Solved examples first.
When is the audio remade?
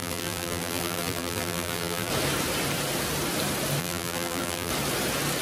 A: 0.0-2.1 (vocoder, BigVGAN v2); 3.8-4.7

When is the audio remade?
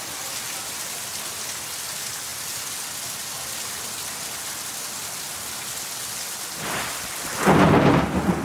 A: none